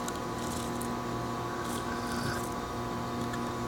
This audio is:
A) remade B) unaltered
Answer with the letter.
B